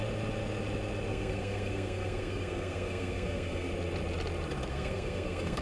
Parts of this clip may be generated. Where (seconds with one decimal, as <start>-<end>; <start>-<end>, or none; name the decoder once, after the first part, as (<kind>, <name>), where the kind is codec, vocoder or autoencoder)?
1.1-3.7 (codec, SNAC); 4.7-5.6